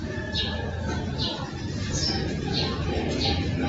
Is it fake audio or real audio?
fake